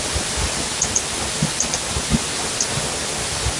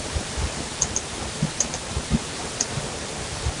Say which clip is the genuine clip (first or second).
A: first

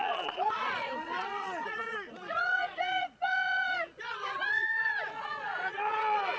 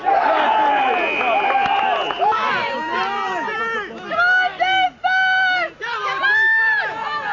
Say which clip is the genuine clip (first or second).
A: second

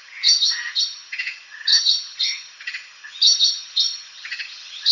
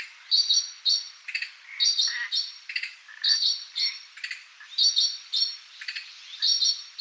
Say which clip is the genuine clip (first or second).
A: second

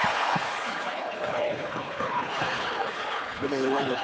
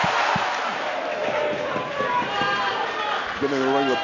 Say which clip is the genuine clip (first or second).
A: second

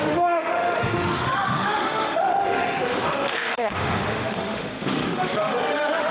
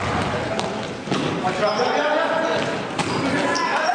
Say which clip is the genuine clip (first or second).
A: second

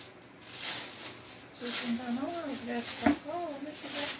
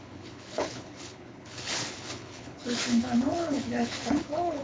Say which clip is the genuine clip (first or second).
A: first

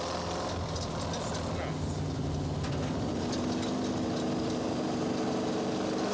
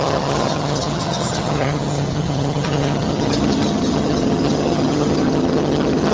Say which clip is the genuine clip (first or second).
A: first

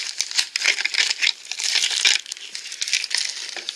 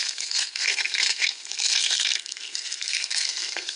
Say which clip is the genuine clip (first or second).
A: first